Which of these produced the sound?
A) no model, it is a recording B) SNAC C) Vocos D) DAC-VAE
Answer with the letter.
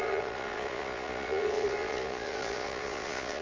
C